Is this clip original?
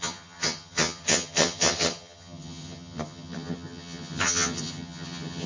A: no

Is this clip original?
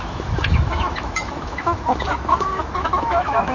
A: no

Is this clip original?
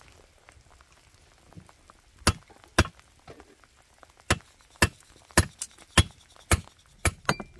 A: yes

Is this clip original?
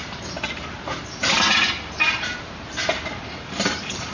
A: no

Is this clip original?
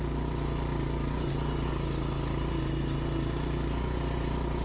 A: yes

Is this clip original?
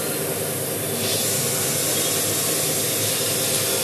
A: yes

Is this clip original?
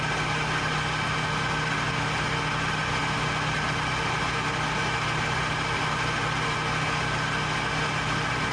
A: yes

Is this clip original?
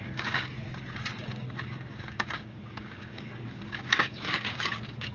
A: no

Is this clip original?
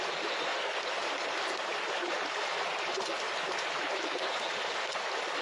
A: yes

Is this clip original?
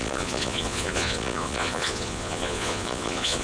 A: no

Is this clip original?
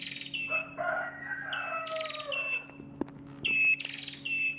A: yes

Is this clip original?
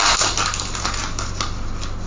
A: yes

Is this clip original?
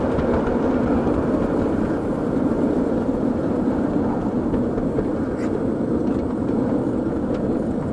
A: yes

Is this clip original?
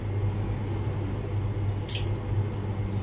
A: yes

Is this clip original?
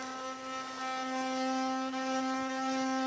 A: yes